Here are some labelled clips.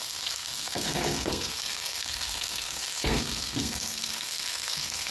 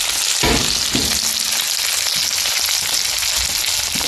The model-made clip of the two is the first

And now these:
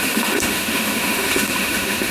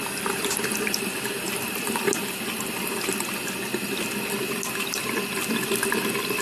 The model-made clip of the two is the first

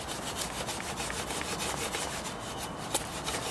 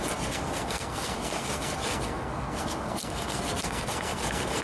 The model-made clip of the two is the second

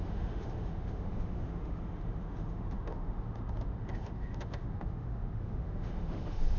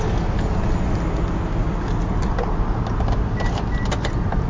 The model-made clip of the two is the first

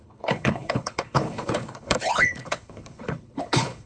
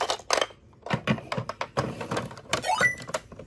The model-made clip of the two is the first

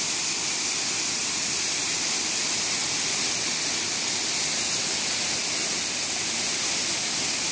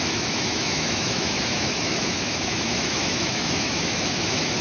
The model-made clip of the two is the second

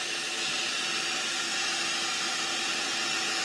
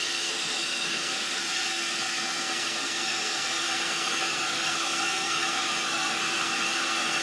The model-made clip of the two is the second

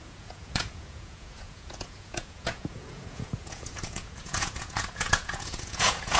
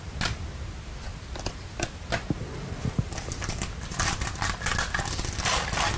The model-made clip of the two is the first